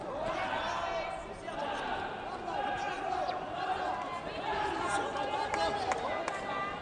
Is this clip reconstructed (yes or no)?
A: no